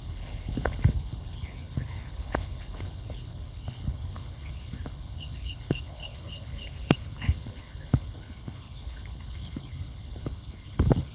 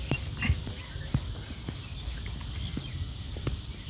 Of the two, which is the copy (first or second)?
first